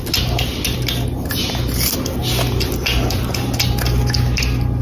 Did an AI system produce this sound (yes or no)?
no